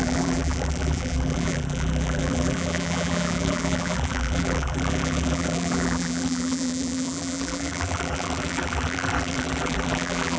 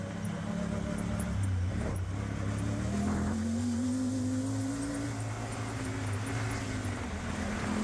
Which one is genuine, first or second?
second